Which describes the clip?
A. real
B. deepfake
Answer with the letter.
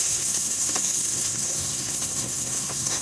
B